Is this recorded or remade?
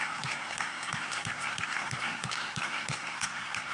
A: remade